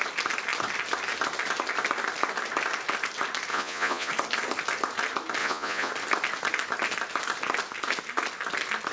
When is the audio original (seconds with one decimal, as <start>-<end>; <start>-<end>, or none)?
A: 0.0-3.5; 4.1-5.4; 5.9-8.9